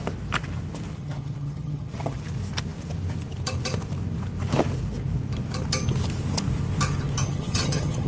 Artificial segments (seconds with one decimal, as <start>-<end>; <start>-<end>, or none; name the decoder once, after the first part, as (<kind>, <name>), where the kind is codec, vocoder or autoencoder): 0.9-2.2 (vocoder, HiFi-GAN); 7.2-8.1